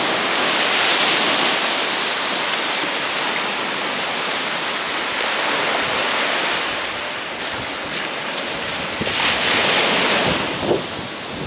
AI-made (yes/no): no